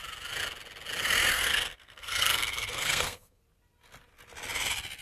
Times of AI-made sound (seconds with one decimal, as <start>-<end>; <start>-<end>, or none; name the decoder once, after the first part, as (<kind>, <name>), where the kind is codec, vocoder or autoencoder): 1.3-3.4 (codec, SNAC)